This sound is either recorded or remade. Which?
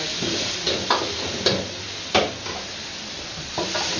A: recorded